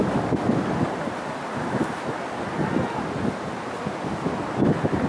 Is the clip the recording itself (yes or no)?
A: yes